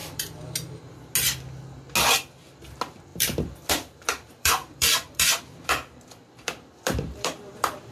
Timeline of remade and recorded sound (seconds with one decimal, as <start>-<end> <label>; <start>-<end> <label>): 0.0-0.5 remade; 0.5-3.1 recorded; 3.1-7.9 remade